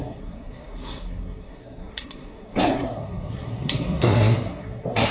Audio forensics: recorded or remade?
remade